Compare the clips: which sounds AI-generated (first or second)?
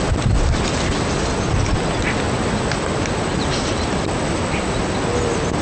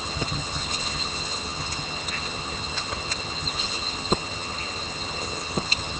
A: second